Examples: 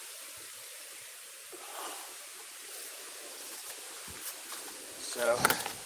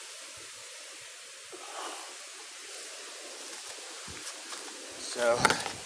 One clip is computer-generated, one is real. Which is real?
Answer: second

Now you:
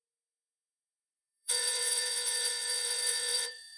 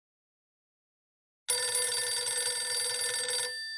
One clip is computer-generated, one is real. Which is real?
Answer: second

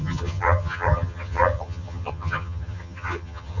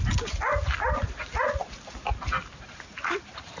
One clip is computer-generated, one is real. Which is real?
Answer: second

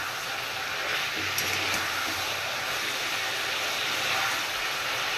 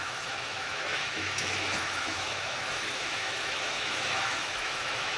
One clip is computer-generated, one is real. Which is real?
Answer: first